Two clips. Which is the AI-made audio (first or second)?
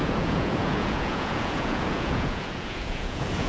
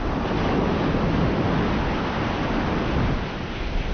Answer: first